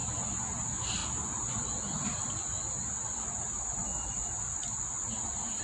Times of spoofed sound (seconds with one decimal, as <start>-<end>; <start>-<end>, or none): none